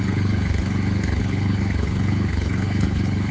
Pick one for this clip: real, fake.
fake